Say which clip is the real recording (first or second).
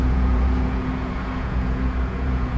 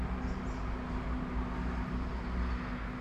second